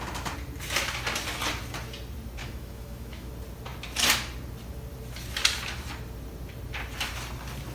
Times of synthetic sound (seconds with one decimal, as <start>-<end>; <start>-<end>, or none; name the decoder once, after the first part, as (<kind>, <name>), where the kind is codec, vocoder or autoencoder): 2.4-3.3 (autoencoder, DAC-VAE)